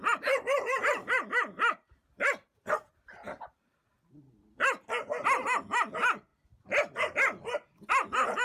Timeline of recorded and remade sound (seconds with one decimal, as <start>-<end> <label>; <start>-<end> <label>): 0.0-3.8 remade; 3.8-8.4 recorded